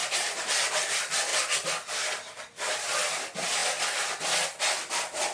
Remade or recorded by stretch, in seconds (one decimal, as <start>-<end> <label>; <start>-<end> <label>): 0.0-5.3 recorded